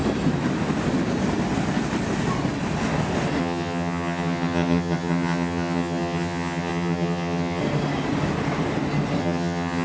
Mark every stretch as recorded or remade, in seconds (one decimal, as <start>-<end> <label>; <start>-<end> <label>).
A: 0.0-3.4 recorded; 3.4-7.6 remade; 7.6-9.2 recorded; 9.2-9.8 remade